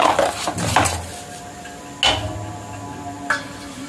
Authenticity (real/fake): real